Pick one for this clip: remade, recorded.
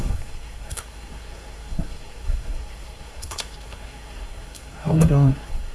remade